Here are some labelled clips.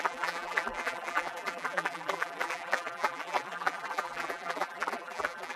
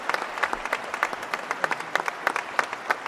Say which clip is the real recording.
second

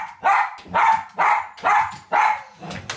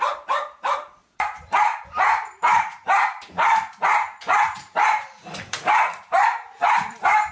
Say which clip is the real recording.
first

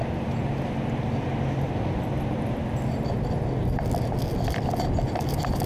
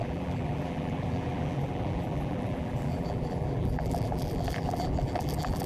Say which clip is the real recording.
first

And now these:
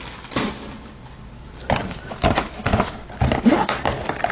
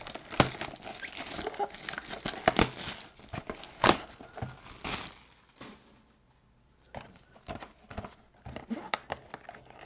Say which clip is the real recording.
second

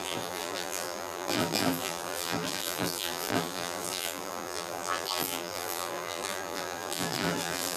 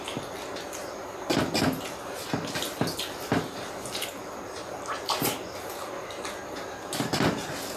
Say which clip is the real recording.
second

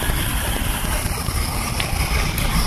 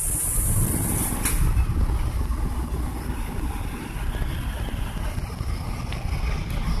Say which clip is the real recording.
second